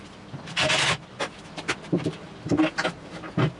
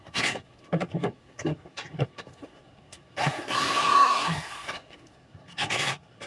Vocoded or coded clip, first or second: second